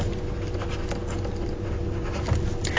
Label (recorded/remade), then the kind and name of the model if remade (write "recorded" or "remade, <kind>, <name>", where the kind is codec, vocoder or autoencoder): recorded